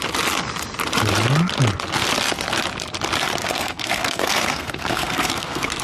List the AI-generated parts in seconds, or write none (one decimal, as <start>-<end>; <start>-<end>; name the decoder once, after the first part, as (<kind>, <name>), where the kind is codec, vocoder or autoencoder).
3.4-5.8 (codec, SNAC)